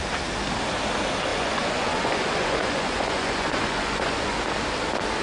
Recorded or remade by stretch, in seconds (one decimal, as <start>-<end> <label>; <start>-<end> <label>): 0.0-1.3 recorded; 1.3-4.4 remade; 4.4-5.2 recorded